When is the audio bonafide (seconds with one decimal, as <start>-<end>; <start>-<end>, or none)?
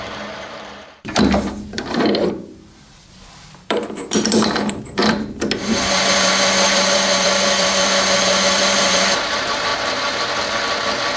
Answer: 5.0-5.6; 9.7-11.2